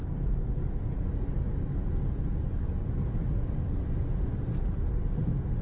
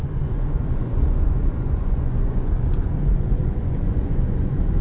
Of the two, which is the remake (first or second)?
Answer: second